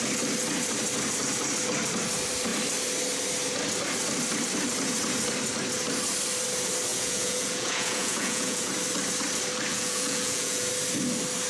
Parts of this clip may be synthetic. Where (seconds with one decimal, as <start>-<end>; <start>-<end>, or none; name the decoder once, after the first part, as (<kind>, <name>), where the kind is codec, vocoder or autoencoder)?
6.9-8.7 (vocoder, Vocos); 9.7-10.7